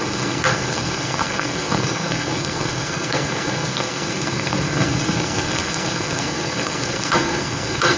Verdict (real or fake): fake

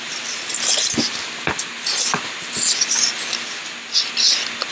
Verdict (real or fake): real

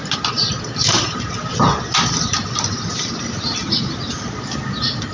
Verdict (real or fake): real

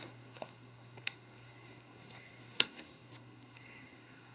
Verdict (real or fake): fake